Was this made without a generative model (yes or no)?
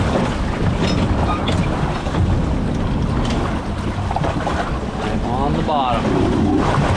yes